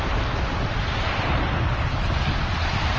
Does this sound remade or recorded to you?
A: recorded